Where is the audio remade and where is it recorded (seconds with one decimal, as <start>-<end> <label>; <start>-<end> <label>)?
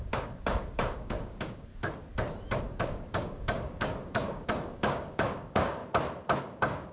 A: 0.0-1.7 remade; 1.7-2.6 recorded; 2.6-5.8 remade; 5.8-6.4 recorded; 6.4-6.9 remade